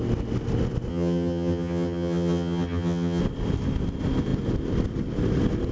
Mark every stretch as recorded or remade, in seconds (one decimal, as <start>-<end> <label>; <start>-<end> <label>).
0.0-0.9 recorded; 0.9-3.2 remade; 3.2-5.7 recorded